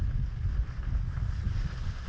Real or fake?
real